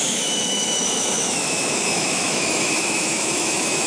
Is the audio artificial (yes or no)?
yes